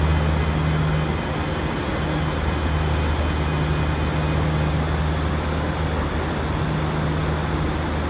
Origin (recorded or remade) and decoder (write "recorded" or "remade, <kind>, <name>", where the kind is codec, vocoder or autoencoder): recorded